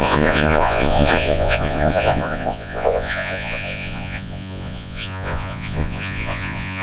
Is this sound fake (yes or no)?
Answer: yes